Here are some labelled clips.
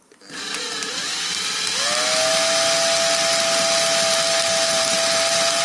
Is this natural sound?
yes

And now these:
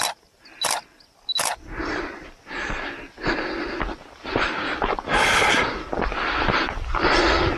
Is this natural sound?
yes